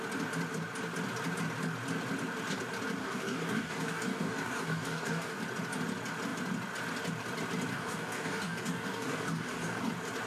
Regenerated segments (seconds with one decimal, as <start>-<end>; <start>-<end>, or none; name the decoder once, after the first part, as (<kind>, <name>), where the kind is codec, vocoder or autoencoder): 3.0-5.4 (codec, DAC); 7.7-9.9